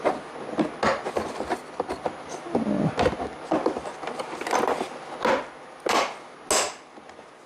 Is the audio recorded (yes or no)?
yes